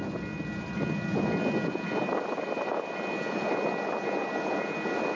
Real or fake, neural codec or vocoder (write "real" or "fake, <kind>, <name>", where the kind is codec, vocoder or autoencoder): real